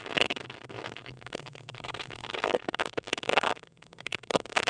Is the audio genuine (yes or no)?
no